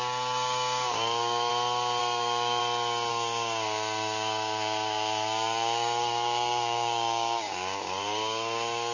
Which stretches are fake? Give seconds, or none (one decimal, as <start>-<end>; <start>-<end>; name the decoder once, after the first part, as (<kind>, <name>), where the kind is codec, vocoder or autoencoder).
0.0-1.5 (codec, DAC); 2.0-2.6; 3.1-8.9

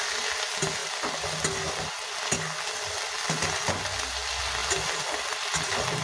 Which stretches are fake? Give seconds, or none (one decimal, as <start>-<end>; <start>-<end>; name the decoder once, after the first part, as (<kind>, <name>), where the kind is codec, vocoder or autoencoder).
none

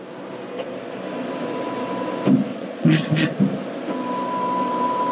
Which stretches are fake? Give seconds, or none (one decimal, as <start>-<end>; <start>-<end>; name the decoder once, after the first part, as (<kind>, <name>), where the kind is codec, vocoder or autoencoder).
2.5-3.4 (vocoder, Vocos)

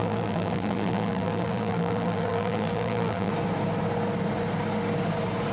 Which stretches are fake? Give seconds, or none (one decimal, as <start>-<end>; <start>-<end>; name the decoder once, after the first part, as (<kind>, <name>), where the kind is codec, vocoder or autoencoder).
0.0-3.3 (vocoder, BigVGAN v2)

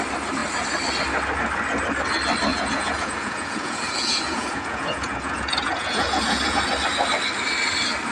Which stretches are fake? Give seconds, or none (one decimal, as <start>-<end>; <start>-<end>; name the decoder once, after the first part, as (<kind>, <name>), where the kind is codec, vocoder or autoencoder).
2.5-6.6 (vocoder, Vocos)

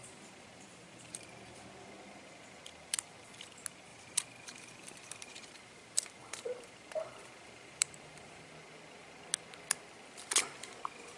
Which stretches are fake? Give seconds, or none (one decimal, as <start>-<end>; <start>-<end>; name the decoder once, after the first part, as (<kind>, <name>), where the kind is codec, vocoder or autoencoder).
0.0-1.9 (vocoder, BigVGAN v2); 3.9-5.6; 6.2-8.5